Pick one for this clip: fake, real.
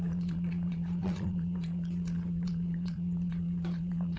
fake